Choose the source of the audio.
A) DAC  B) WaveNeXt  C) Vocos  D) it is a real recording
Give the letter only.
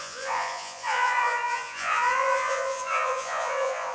C